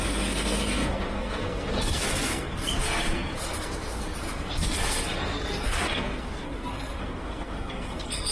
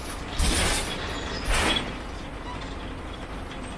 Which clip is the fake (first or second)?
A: first